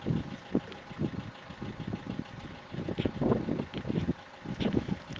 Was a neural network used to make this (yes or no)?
no